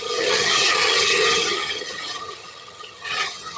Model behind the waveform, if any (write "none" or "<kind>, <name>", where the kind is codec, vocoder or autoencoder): vocoder, HiFi-GAN